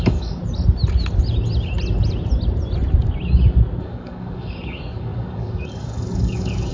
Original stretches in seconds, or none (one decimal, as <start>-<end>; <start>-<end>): 0.4-3.8